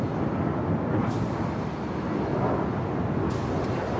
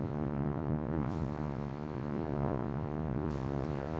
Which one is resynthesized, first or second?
second